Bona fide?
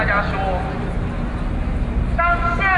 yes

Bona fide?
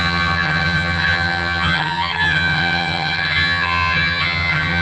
no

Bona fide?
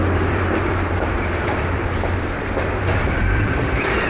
no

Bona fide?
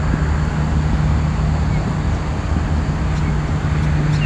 yes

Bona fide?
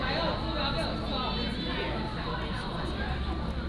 yes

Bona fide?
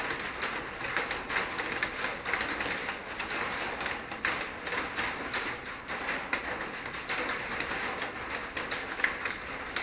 yes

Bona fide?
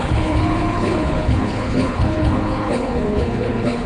no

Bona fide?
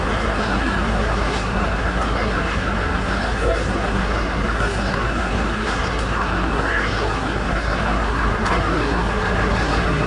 no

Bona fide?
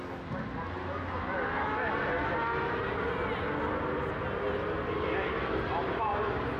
yes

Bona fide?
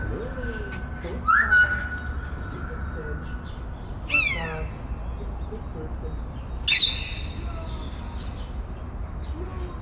yes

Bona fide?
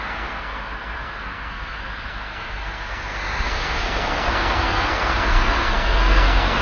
no